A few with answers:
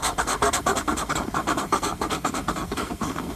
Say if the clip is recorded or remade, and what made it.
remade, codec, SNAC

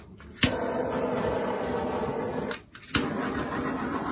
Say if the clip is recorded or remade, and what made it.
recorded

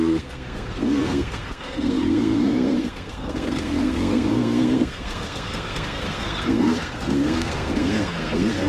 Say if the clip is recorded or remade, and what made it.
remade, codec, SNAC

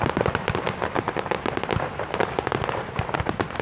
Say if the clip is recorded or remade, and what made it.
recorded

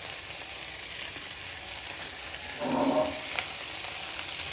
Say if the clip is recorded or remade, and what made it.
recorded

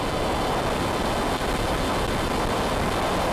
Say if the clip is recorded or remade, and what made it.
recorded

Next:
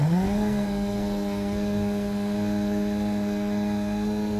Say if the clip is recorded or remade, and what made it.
remade, codec, SNAC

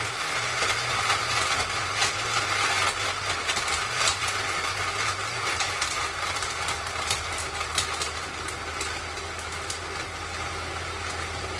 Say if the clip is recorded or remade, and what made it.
recorded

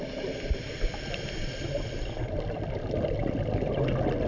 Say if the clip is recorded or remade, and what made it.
recorded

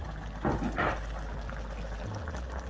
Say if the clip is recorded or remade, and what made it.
recorded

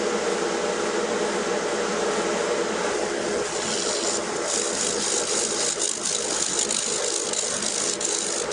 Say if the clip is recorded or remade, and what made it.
recorded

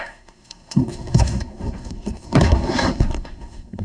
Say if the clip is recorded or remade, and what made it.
remade, codec, SNAC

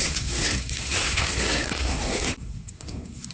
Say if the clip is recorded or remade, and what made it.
remade, codec, SNAC